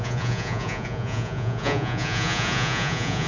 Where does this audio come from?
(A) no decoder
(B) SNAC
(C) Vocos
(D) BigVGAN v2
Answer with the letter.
C